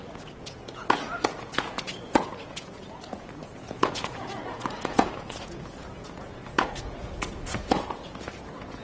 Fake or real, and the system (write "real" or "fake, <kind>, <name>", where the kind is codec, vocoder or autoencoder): fake, vocoder, Vocos